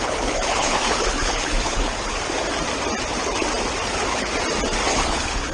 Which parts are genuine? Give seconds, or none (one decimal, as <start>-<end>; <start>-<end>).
2.1-3.9; 4.3-4.9